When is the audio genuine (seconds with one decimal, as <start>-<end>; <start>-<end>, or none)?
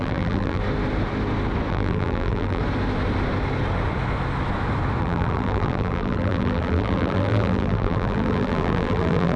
0.6-1.7; 2.6-5.0